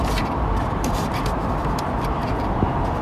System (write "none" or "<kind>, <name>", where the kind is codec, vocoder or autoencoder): vocoder, BigVGAN v2